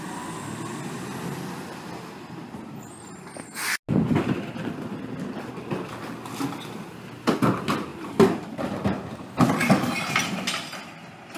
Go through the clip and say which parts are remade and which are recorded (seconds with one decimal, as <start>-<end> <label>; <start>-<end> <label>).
0.0-11.4 recorded